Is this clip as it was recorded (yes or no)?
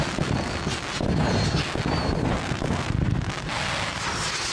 yes